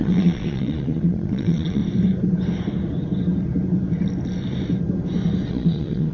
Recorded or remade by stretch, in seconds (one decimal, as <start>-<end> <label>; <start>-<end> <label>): 0.0-1.8 remade; 1.8-5.5 recorded; 5.5-6.1 remade